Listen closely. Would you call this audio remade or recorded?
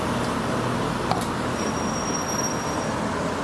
recorded